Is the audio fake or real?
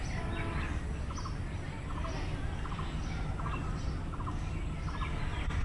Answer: real